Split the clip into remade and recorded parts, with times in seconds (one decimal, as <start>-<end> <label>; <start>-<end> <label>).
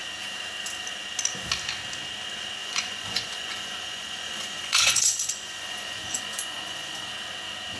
0.0-2.6 recorded; 2.6-7.1 remade; 7.1-7.8 recorded